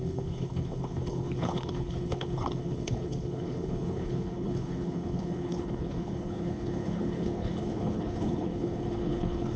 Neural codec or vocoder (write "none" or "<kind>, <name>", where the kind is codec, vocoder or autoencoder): codec, HILCodec